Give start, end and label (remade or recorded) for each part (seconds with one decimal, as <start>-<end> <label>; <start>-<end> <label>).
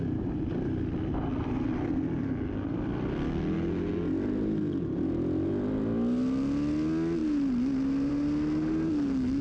0.0-9.4 recorded